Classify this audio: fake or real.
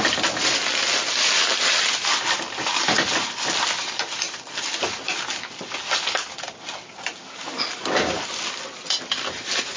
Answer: real